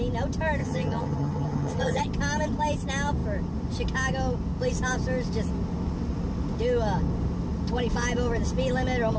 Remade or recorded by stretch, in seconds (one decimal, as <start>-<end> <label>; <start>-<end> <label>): 0.0-0.6 recorded; 0.6-2.0 remade; 2.0-9.2 recorded